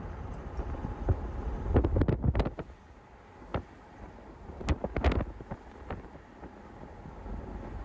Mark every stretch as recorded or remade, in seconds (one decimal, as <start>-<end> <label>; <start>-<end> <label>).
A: 0.0-7.8 recorded